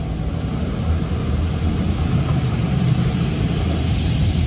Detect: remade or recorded recorded